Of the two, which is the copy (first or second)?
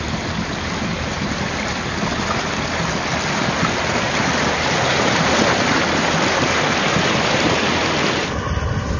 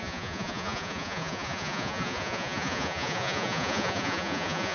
second